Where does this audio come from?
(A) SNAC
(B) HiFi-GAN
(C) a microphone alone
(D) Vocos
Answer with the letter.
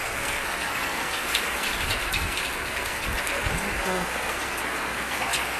A